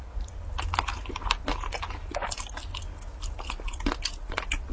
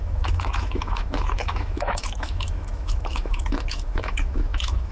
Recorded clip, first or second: first